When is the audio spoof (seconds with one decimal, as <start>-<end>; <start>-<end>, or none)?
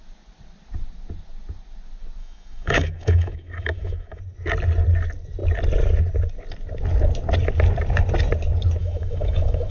2.2-4.2; 8.8-9.7